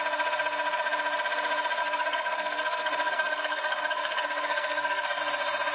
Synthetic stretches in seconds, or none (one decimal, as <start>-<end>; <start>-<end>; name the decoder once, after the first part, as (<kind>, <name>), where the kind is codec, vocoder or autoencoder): 1.8-5.2 (codec, SNAC)